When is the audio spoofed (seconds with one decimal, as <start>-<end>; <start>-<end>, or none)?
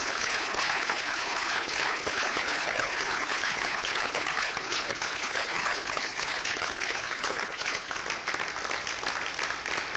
0.0-8.0